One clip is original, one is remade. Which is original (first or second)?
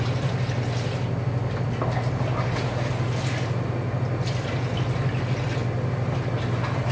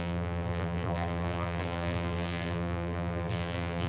first